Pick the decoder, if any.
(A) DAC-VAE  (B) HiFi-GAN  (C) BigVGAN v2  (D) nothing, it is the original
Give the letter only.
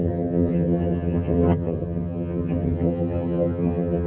B